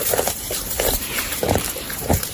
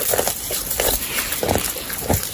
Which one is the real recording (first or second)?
second